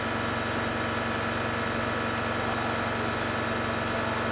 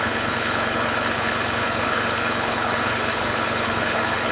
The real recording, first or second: first